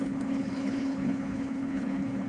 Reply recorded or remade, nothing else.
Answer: remade